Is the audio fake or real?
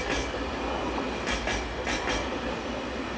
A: real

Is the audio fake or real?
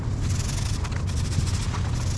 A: real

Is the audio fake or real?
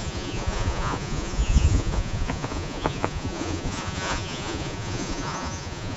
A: fake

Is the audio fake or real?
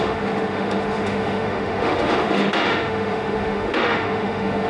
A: fake